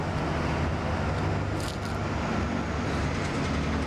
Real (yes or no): yes